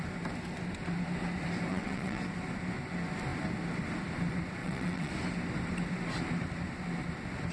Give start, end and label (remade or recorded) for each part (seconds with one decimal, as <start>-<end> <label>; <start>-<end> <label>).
0.0-1.7 recorded; 1.7-2.2 remade; 2.2-4.6 recorded; 4.6-5.1 remade; 5.1-7.5 recorded